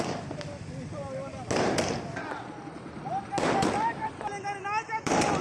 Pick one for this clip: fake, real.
real